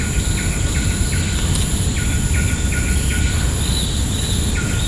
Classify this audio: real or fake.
real